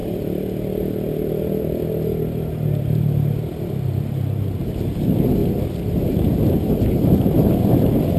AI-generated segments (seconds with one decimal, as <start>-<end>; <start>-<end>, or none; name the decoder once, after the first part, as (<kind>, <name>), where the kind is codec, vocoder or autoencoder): 5.4-7.7 (vocoder, BigVGAN v2)